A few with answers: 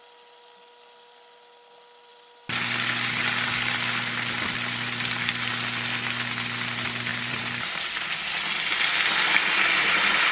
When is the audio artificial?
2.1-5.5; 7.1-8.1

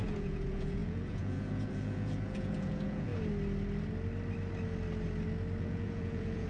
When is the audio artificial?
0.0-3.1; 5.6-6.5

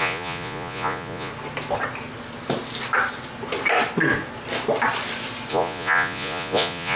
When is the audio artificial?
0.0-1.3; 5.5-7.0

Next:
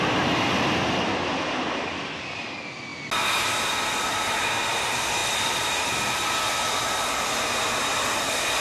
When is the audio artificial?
none

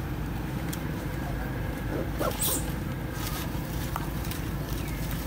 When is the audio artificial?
0.0-5.3

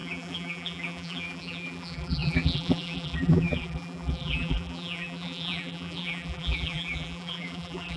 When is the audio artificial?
0.0-8.0